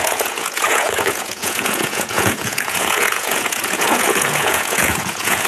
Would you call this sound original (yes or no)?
no